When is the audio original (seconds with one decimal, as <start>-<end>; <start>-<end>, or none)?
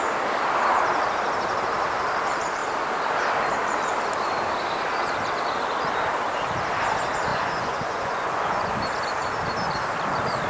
0.0-7.3; 8.7-10.5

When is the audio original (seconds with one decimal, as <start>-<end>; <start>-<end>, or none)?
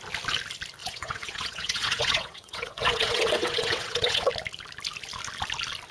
0.0-0.8; 4.3-5.9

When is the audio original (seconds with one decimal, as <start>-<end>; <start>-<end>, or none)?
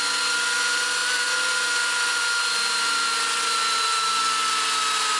0.0-5.2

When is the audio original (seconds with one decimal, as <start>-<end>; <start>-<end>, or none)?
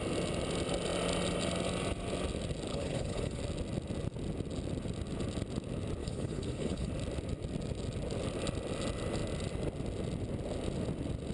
0.0-2.7; 3.4-6.0; 6.9-11.3